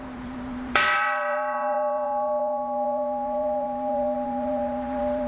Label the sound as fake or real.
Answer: fake